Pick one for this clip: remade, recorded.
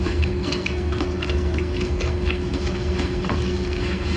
remade